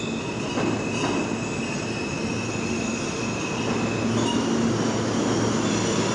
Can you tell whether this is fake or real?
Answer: real